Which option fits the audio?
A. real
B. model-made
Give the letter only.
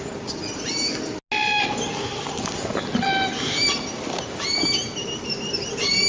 A